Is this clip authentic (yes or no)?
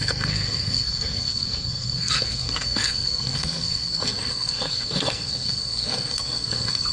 no